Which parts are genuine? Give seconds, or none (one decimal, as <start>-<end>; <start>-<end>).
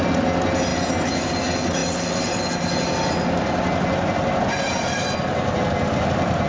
0.0-6.5